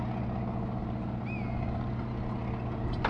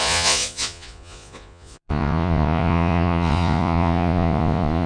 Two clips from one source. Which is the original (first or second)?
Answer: first